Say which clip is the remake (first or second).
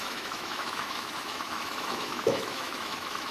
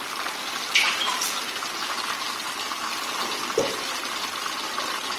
first